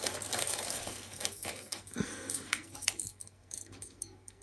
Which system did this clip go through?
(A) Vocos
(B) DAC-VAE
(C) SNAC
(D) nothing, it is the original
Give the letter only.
C